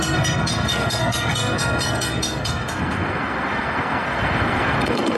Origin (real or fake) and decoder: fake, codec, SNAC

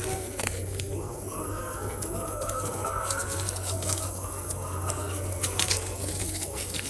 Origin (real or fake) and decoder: fake, codec, SNAC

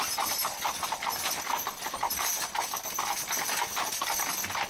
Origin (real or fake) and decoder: real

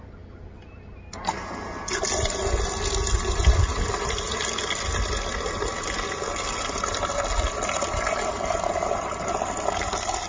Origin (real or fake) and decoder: real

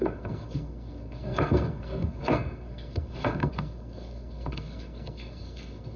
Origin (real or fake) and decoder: fake, codec, SNAC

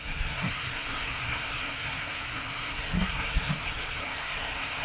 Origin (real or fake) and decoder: fake, codec, SNAC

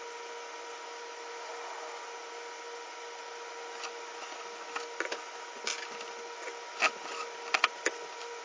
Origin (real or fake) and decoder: real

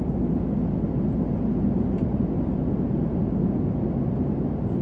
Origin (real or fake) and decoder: real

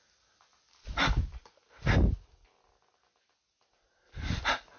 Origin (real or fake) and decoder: real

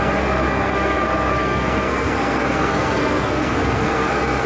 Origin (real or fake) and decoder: fake, codec, SNAC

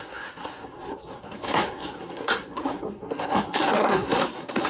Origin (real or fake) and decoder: fake, codec, SNAC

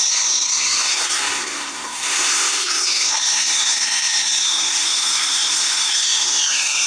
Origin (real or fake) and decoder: fake, codec, SNAC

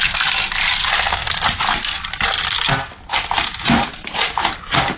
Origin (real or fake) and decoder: real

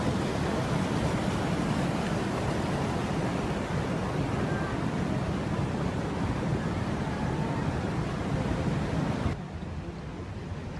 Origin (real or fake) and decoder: real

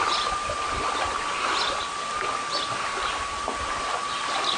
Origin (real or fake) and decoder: real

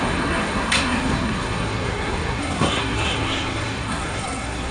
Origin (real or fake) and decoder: fake, codec, SNAC